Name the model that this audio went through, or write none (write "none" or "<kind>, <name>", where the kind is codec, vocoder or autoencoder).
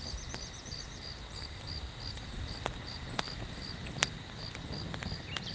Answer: none